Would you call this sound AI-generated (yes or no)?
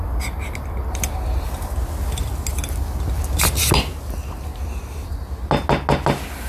no